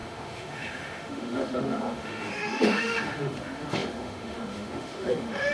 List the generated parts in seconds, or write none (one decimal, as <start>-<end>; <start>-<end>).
0.0-5.5